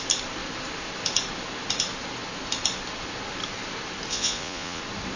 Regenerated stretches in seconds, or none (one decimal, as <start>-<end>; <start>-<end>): 4.1-4.8